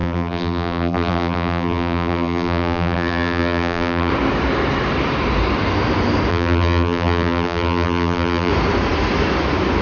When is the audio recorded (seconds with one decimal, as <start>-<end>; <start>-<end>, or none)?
4.1-6.3; 8.5-9.8